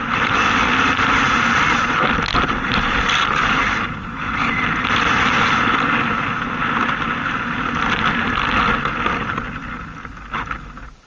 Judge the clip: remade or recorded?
recorded